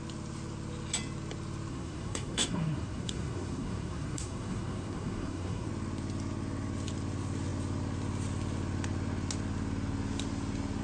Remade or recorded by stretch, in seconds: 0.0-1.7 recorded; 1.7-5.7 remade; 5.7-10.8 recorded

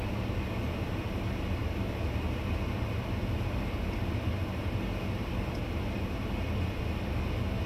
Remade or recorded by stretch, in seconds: 0.0-7.7 recorded

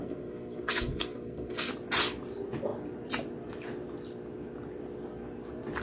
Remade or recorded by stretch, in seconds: 0.0-1.7 remade; 1.7-5.8 recorded

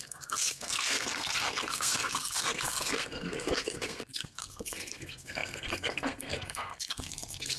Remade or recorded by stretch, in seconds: 0.0-7.6 remade

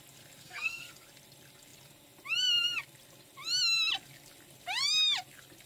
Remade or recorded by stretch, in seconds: 0.0-0.4 recorded; 0.4-0.9 remade; 0.9-5.7 recorded

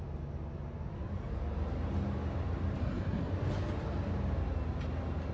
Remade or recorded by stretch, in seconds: 0.0-2.8 recorded; 2.8-3.3 remade; 3.3-5.3 recorded